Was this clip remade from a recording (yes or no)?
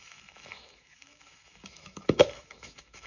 yes